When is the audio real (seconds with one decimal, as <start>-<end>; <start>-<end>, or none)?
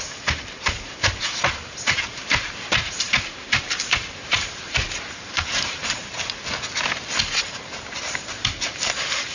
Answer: 6.4-7.2